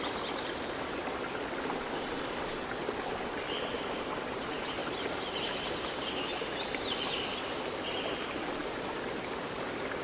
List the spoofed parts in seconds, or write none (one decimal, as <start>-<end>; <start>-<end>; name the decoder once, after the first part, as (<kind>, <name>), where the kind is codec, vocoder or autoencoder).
none